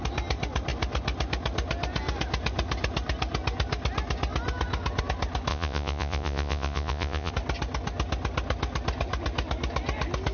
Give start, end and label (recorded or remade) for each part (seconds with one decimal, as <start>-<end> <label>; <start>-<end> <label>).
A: 0.0-5.5 recorded; 5.5-7.3 remade; 7.3-10.3 recorded